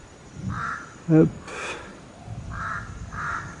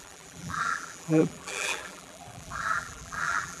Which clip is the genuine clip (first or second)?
first